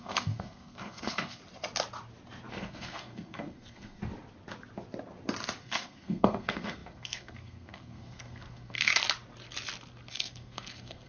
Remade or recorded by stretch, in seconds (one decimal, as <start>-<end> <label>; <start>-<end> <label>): 0.0-1.4 remade; 1.4-2.5 recorded; 2.5-4.0 remade; 4.0-5.6 recorded; 5.6-8.9 remade; 8.9-10.1 recorded; 10.1-11.1 remade